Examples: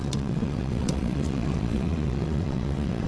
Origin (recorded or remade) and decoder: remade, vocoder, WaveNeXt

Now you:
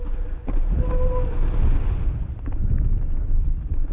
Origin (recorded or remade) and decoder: recorded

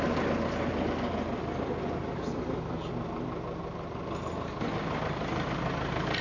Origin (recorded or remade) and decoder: recorded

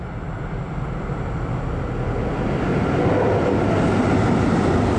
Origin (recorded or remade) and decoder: recorded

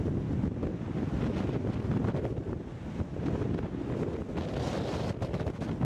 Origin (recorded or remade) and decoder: recorded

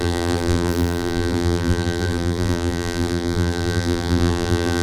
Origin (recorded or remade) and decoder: remade, vocoder, BigVGAN v2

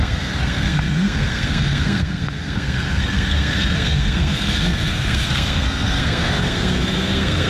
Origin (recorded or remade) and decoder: remade, codec, SNAC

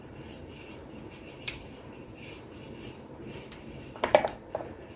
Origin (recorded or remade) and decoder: remade, vocoder, BigVGAN v2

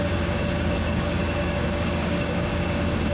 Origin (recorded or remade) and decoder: remade, codec, DAC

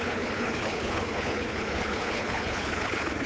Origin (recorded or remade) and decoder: remade, codec, HILCodec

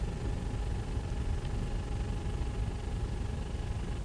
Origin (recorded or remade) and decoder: recorded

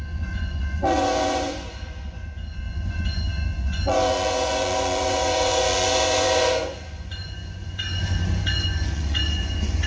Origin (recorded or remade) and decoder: remade, vocoder, Vocos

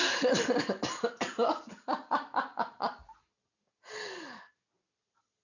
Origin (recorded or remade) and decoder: recorded